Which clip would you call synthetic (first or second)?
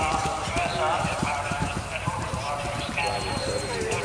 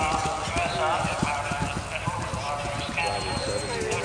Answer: first